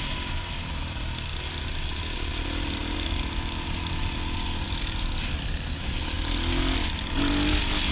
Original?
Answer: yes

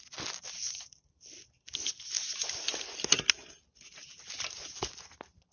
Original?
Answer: yes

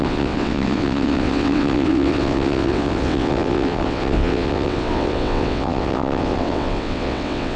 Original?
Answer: no